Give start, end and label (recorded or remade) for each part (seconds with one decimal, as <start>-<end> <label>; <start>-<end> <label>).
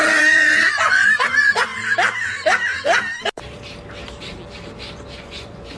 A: 0.0-1.7 remade; 1.7-5.2 recorded; 5.2-5.8 remade